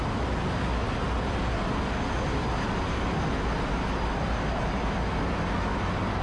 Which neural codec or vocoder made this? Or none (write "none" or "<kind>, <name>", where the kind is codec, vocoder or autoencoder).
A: none